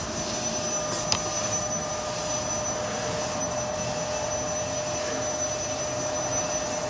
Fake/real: real